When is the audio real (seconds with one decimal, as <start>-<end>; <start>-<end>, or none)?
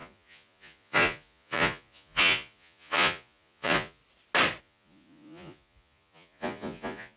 4.0-4.6